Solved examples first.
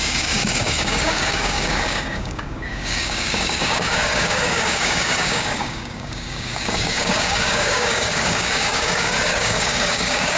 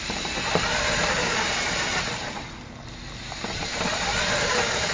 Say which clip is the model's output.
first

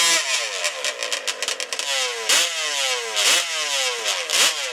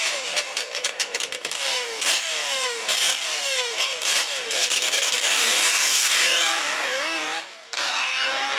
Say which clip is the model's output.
second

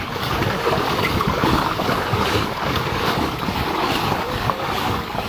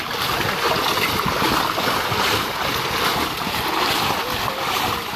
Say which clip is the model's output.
first